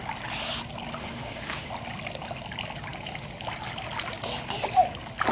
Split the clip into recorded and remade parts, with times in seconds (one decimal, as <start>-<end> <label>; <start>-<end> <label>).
0.0-1.0 recorded; 1.0-1.7 remade; 1.7-5.3 recorded